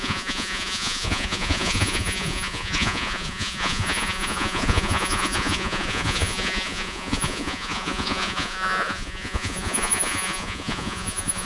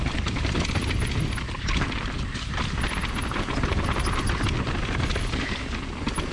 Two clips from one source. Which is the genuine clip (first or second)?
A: second